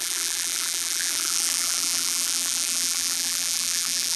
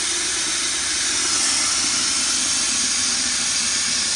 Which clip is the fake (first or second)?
first